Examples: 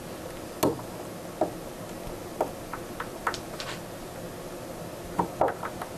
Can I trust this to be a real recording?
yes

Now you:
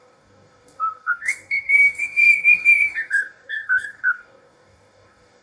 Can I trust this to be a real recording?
no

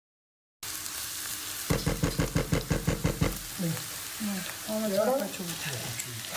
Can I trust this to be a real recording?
yes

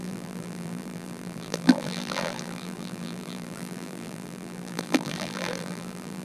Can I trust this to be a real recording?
no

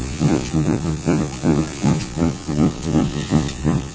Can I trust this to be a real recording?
no